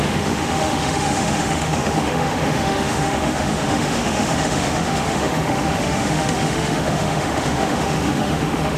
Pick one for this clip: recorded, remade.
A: remade